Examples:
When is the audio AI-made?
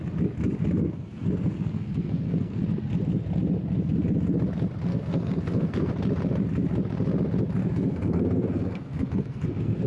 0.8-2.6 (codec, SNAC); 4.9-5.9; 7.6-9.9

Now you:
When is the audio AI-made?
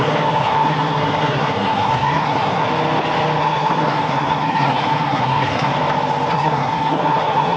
0.0-2.7 (codec, SNAC); 3.4-5.7; 6.3-7.6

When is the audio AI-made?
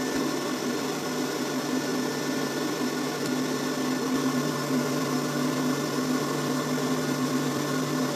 0.0-1.9 (vocoder, BigVGAN v2); 2.4-8.2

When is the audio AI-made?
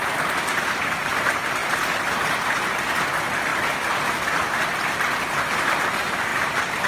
none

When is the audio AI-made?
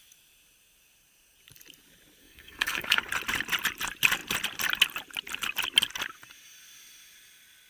2.2-3.0 (codec, SNAC)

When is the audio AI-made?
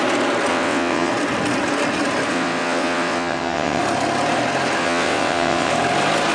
0.5-1.1 (vocoder, WaveNeXt); 2.3-3.8; 4.8-5.7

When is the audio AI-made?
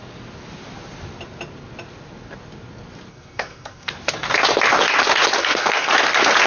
3.1-3.9 (codec, SNAC); 5.4-5.9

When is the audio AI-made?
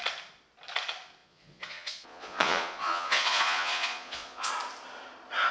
1.2-4.5 (vocoder, Vocos)